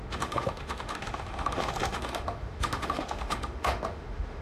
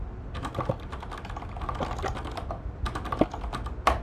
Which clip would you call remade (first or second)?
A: first